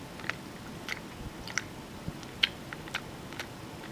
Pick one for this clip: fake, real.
real